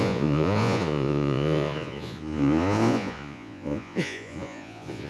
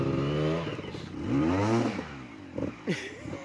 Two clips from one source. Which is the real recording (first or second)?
second